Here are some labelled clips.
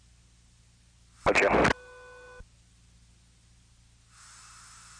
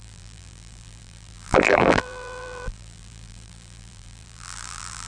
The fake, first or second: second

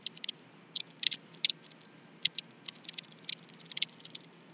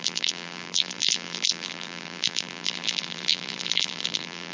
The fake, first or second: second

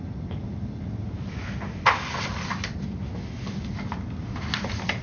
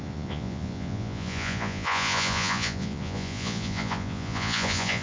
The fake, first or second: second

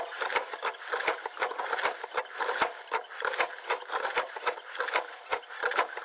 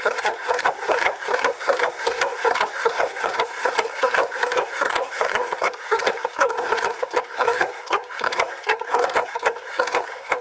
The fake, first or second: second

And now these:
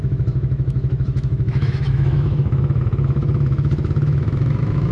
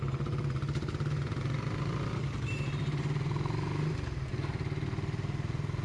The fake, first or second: first